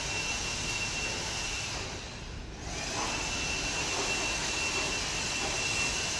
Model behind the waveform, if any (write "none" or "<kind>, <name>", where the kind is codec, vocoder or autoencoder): none